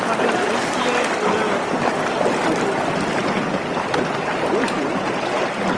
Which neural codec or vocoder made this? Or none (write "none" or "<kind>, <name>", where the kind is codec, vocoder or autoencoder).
none